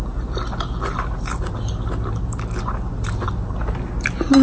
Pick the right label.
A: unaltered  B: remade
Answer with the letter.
A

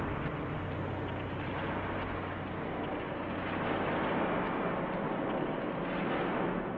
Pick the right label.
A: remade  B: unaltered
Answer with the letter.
B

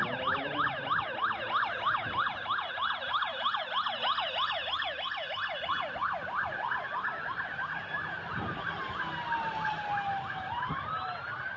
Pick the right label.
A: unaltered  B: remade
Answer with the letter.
A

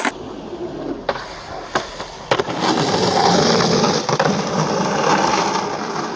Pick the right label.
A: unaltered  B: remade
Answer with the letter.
A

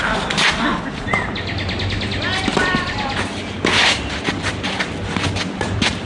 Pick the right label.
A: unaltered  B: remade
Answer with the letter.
B